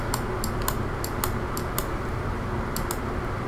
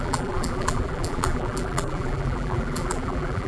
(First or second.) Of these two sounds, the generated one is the second